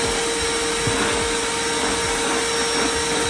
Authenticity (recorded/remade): recorded